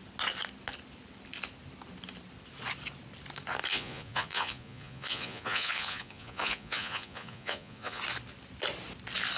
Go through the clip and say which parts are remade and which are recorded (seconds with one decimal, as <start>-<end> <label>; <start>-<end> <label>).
0.0-3.7 recorded; 3.7-8.0 remade; 8.0-9.4 recorded

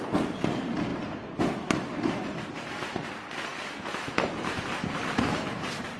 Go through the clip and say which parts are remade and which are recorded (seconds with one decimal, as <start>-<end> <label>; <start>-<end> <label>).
0.0-6.0 recorded

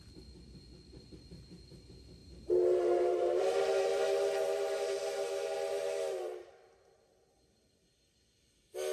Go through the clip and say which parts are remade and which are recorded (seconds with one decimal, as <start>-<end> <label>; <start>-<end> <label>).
0.0-2.2 recorded; 2.2-6.5 remade; 6.5-8.9 recorded

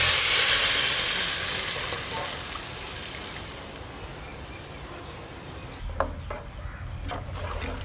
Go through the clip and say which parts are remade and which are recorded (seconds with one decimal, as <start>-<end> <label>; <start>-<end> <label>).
0.0-7.8 recorded

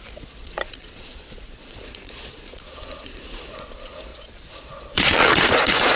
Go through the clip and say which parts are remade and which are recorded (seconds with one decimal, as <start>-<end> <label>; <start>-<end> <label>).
0.0-6.0 remade

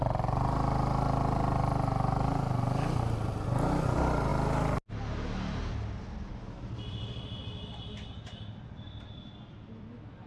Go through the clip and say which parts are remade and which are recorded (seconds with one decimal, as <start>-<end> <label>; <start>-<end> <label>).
0.0-10.3 recorded

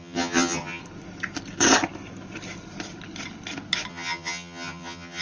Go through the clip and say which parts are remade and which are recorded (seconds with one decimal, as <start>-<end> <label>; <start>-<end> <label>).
0.0-0.8 remade; 0.8-3.9 recorded; 3.9-5.2 remade

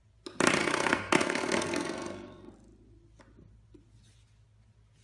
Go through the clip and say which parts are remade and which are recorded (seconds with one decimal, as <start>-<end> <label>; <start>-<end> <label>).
0.0-0.6 recorded; 0.6-2.5 remade; 2.5-5.0 recorded